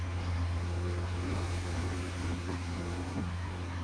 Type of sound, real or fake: fake